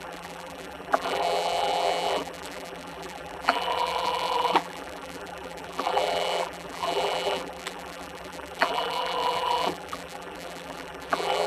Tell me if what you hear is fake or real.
fake